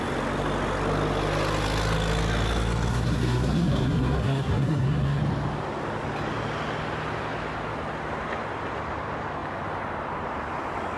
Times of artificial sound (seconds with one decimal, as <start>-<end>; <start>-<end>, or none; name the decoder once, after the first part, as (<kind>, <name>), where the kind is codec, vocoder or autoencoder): 2.9-5.2 (codec, SNAC)